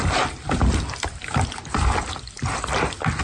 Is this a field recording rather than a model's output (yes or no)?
no